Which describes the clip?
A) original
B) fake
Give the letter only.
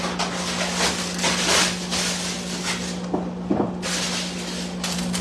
A